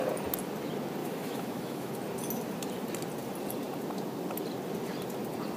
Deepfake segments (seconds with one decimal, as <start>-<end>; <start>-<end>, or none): 1.0-1.9